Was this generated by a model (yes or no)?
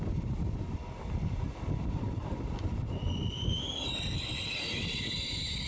no